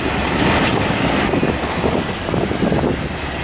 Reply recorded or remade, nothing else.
recorded